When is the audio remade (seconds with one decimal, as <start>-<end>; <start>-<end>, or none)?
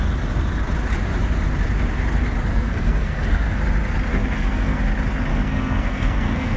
2.5-3.6; 4.1-4.8; 5.3-6.6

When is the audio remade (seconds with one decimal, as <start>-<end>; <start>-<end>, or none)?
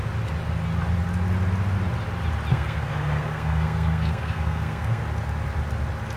2.5-5.0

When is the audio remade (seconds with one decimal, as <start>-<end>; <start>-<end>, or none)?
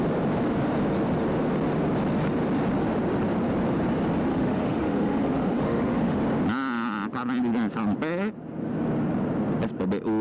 4.3-6.2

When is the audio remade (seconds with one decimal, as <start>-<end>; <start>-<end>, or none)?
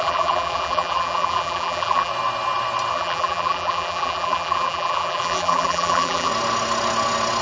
0.0-2.1; 2.9-6.3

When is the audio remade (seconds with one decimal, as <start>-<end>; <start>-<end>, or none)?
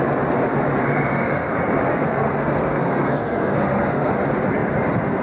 0.8-1.5; 1.9-4.1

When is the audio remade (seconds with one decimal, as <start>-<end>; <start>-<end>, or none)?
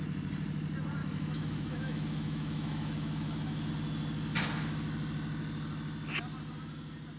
1.0-3.7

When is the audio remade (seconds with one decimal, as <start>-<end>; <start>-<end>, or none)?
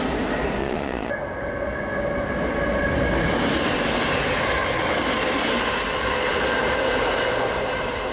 0.6-1.1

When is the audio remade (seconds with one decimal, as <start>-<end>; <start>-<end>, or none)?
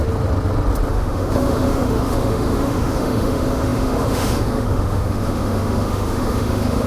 0.9-6.9